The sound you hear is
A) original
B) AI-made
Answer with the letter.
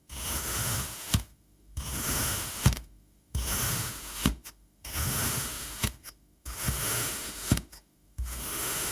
B